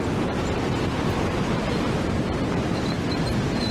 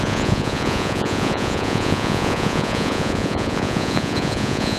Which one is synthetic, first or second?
second